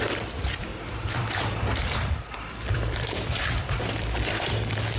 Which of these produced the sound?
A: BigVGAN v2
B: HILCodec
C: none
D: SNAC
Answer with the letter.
A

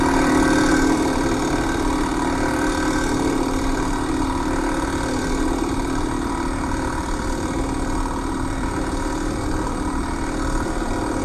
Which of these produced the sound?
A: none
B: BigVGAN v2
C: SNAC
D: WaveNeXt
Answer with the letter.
B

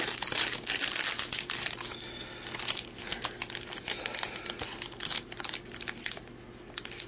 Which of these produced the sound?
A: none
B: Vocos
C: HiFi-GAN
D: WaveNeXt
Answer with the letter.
A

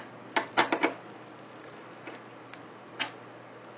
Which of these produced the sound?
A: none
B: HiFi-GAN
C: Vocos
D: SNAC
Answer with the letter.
A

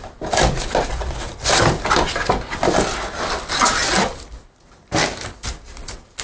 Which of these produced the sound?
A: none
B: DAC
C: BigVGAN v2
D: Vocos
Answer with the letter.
A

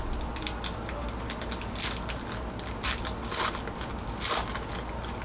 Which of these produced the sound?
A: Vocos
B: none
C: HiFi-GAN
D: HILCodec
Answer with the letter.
B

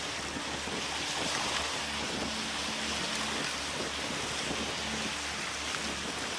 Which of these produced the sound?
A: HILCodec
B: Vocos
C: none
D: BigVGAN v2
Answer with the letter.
C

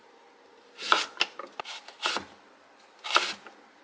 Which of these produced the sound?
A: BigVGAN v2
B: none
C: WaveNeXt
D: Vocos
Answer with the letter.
B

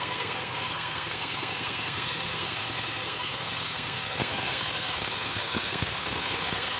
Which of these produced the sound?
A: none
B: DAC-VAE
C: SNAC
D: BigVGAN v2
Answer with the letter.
C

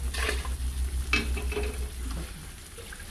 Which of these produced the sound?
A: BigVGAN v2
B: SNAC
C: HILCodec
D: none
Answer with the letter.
D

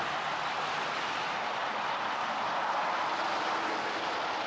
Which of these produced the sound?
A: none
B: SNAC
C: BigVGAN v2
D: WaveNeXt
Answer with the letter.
A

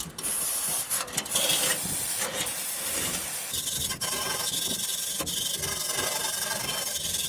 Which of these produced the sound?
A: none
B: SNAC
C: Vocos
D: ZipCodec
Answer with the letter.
A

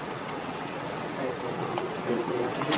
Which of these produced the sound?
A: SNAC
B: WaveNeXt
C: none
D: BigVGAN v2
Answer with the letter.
B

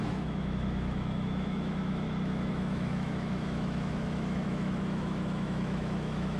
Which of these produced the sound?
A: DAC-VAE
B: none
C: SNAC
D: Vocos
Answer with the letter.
A